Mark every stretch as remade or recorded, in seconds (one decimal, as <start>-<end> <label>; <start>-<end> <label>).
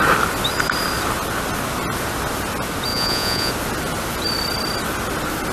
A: 0.0-2.9 recorded; 2.9-3.5 remade; 3.5-5.5 recorded